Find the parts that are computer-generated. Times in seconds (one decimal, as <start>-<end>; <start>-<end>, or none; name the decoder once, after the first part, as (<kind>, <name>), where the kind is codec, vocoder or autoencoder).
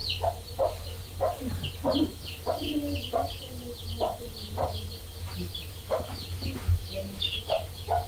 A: 5.7-8.1 (autoencoder, DAC-VAE)